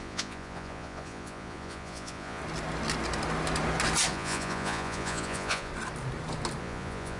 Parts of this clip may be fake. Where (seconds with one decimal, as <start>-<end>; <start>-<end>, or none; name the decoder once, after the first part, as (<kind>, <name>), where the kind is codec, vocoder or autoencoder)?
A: 0.0-2.4 (vocoder, Vocos); 4.1-5.7; 6.6-7.2